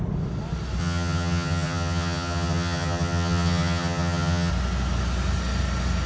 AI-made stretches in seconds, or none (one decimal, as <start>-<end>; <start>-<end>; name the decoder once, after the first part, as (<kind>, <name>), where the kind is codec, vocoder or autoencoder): 0.8-4.5 (vocoder, HiFi-GAN)